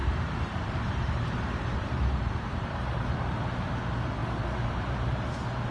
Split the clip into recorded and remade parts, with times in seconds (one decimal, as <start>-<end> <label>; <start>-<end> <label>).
0.0-3.4 remade; 3.4-4.2 recorded; 4.2-5.3 remade; 5.3-5.7 recorded